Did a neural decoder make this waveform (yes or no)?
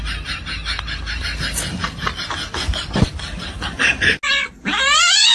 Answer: no